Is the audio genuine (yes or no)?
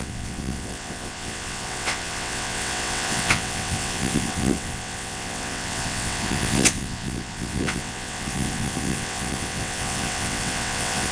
no